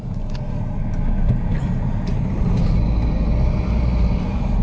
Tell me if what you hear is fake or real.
real